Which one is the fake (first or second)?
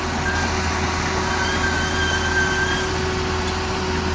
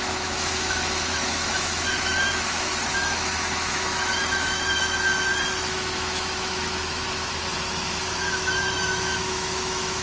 second